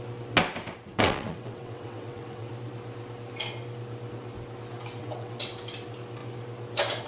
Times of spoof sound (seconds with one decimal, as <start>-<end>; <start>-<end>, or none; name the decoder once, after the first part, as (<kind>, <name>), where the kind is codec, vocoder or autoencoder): 0.9-2.5 (vocoder, WaveNeXt); 5.0-5.5